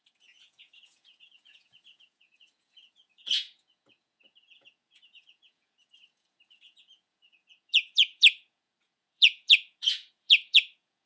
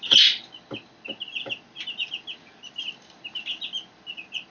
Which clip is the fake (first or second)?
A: first